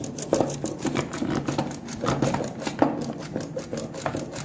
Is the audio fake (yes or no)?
no